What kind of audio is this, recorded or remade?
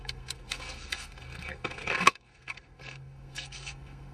remade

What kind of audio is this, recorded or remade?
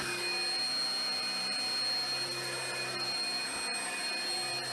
recorded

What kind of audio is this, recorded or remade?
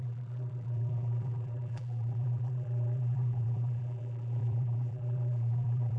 remade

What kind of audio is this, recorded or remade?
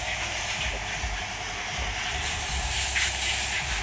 recorded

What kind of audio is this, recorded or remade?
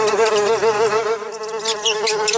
recorded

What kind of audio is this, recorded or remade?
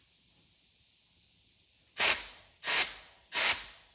recorded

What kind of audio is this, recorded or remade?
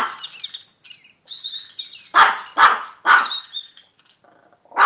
recorded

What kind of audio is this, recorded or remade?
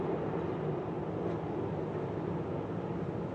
recorded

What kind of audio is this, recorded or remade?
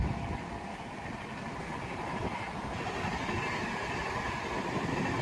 recorded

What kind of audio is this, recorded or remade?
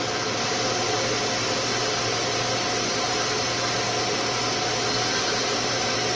recorded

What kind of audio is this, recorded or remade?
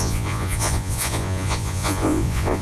remade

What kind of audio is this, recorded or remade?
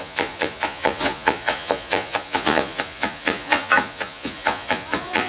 remade